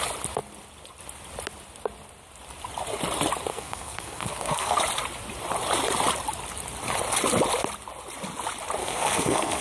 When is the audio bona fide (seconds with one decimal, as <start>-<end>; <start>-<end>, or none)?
0.0-3.5; 4.8-8.8